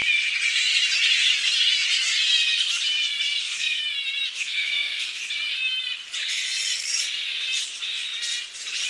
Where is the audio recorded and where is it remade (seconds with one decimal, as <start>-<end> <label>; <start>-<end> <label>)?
0.0-3.4 recorded; 3.4-3.8 remade; 3.8-4.4 recorded; 4.4-5.2 remade; 5.2-8.9 recorded